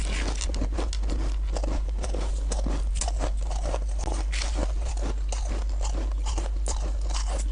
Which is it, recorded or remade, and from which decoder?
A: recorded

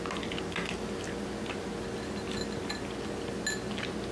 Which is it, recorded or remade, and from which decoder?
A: recorded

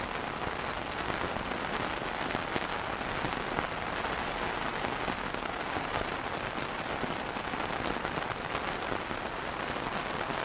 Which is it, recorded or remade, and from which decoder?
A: recorded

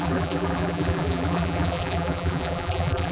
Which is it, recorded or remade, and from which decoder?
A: remade, vocoder, BigVGAN v2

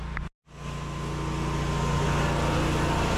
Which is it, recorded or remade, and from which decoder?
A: recorded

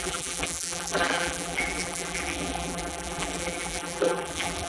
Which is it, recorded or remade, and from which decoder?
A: remade, vocoder, BigVGAN v2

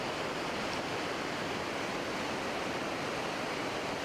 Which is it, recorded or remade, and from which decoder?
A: recorded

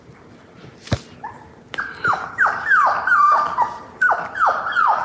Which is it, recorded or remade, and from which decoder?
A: remade, vocoder, BigVGAN v2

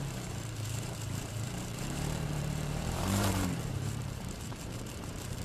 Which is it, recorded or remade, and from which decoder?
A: remade, vocoder, BigVGAN v2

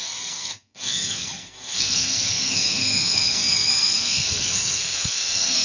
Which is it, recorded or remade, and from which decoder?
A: remade, codec, SNAC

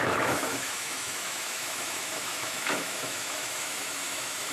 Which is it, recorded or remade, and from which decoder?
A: remade, autoencoder, DAC-VAE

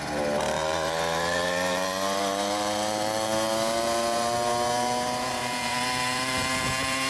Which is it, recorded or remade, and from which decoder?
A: remade, vocoder, BigVGAN v2